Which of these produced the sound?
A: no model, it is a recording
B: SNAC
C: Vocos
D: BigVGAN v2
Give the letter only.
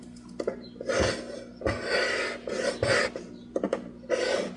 A